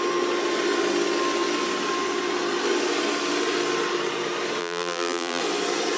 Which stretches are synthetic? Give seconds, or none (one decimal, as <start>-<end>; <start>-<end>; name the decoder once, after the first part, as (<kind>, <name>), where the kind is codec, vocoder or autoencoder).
4.6-5.4 (vocoder, BigVGAN v2)